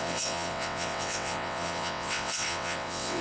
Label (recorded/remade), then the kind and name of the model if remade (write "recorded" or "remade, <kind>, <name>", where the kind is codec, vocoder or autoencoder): remade, vocoder, WaveNeXt